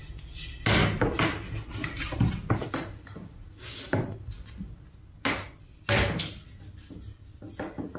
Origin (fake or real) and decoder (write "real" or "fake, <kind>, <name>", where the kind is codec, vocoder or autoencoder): real